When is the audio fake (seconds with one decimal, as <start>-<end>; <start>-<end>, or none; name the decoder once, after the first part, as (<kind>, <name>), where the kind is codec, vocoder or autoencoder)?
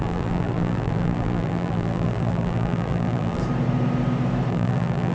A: 0.0-3.4 (vocoder, BigVGAN v2); 4.5-5.1